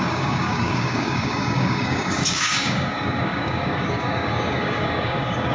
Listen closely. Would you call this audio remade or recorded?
remade